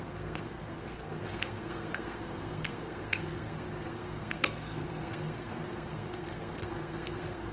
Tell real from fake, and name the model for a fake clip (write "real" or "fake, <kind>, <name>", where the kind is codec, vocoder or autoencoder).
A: fake, codec, SNAC